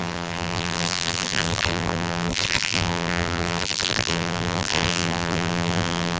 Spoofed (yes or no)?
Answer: yes